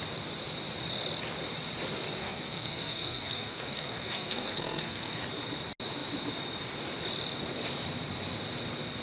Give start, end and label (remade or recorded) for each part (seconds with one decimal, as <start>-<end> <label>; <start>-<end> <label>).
0.0-2.2 recorded; 2.2-5.2 remade; 5.2-9.0 recorded